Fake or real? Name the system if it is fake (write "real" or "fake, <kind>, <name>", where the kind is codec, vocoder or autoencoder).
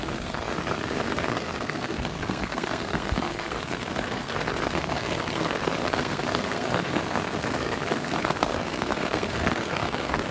fake, codec, SNAC